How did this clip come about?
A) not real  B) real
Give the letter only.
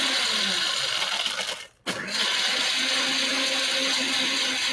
B